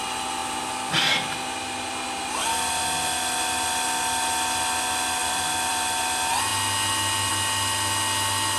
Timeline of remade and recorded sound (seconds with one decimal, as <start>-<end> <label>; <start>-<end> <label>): 0.0-5.2 recorded; 5.2-6.0 remade; 6.0-8.6 recorded